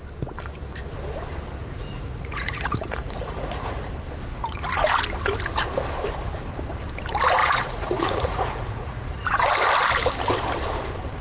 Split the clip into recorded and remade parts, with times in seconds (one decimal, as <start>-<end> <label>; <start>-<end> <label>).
0.0-1.6 recorded; 1.6-3.9 remade; 3.9-4.3 recorded; 4.3-4.9 remade; 4.9-7.4 recorded; 7.4-9.4 remade; 9.4-11.2 recorded

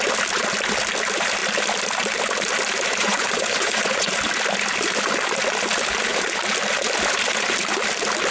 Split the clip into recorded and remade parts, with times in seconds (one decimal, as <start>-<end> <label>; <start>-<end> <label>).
0.0-3.0 recorded; 3.0-4.1 remade; 4.1-8.3 recorded

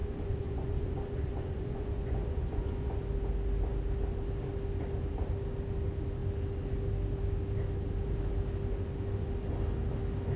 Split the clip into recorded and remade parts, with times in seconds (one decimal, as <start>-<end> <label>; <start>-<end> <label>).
0.0-3.0 remade; 3.0-10.4 recorded